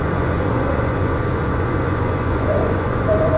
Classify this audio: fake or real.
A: fake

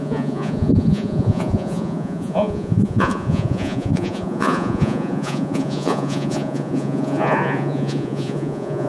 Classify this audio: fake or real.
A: fake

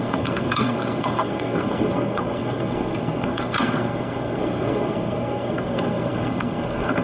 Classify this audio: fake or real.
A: fake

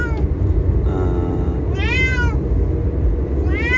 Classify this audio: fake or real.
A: real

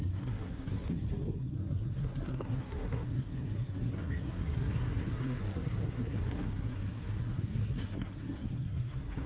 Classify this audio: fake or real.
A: fake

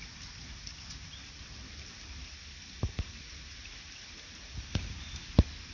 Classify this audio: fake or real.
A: real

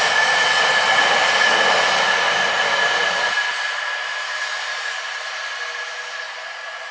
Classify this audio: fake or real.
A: real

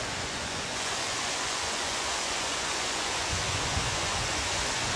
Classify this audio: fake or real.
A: fake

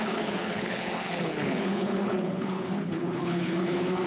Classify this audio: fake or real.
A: fake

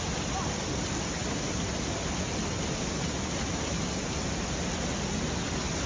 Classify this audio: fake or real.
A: real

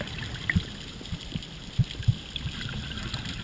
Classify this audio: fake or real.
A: real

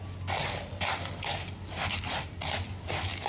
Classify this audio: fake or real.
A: real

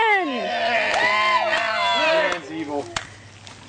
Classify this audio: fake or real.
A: real